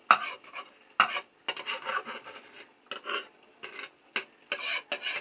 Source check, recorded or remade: recorded